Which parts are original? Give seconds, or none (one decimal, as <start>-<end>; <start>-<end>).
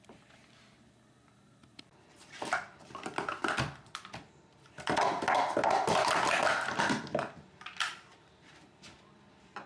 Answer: none